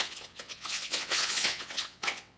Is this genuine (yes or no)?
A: no